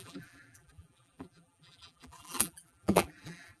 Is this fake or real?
fake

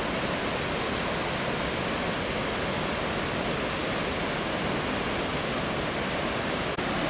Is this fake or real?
real